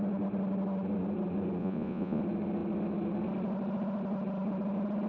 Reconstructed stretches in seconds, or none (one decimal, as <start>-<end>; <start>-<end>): 1.6-2.2